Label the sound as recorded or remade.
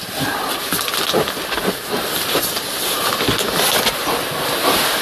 recorded